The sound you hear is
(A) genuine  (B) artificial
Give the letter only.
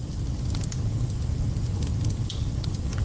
A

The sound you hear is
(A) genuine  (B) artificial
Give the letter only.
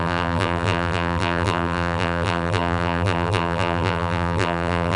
B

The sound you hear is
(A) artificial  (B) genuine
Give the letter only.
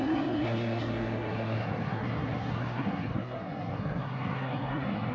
A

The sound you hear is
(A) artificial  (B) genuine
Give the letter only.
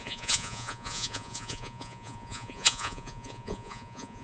A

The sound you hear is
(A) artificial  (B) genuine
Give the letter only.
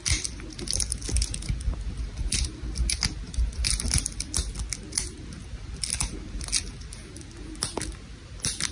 B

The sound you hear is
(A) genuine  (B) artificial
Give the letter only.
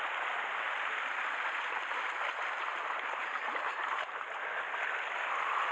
A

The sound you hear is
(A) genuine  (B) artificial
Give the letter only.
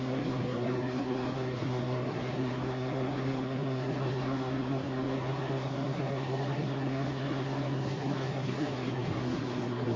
B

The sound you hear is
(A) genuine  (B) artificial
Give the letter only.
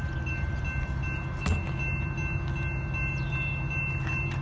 A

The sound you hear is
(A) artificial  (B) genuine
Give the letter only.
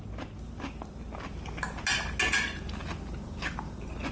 B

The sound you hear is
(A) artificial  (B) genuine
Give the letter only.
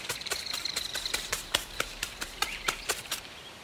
A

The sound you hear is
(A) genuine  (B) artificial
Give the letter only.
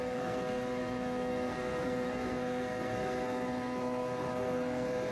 B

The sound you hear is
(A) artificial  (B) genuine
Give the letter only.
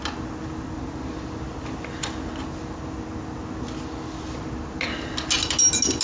B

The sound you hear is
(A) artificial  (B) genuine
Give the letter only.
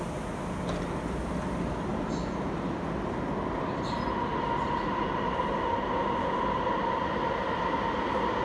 B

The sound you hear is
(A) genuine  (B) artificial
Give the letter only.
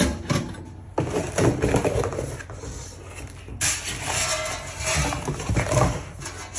A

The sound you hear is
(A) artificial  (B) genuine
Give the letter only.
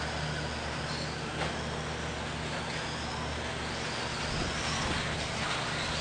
B